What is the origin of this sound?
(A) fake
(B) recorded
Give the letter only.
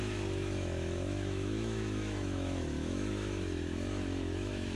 A